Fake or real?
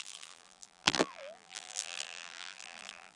fake